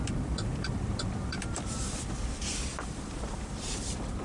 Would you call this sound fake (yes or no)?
yes